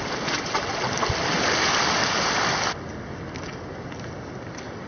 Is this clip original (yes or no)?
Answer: yes